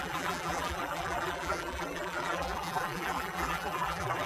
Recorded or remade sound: remade